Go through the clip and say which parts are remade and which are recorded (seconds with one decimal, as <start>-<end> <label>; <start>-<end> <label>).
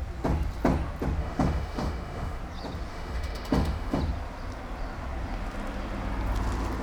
0.0-1.2 recorded; 1.2-2.4 remade; 2.4-2.9 recorded; 2.9-4.0 remade; 4.0-6.8 recorded